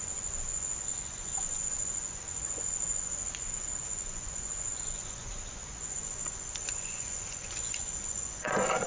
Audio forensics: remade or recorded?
remade